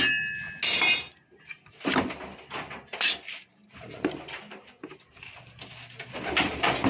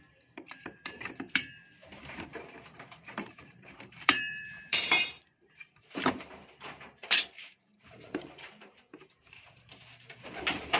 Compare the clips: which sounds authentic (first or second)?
first